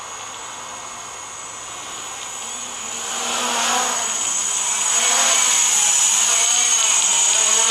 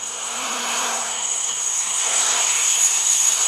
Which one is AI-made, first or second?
second